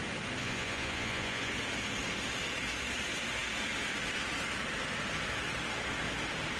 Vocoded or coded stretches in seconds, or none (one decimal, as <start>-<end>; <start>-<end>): 0.4-1.5